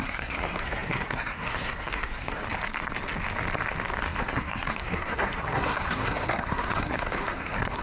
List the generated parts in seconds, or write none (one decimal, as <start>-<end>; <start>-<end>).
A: 0.0-2.4; 4.2-7.8